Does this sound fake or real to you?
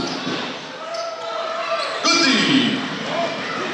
real